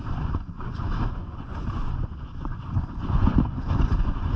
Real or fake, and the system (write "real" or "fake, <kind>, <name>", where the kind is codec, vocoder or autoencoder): fake, vocoder, Vocos